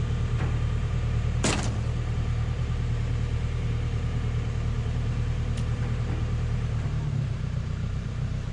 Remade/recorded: remade